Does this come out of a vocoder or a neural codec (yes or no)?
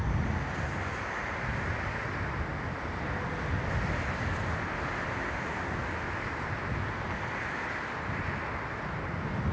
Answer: no